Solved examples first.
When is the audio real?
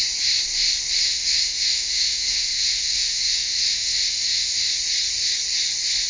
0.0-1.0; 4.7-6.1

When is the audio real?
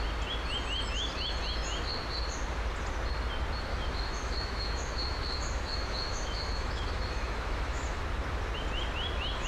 0.0-3.7; 8.0-9.5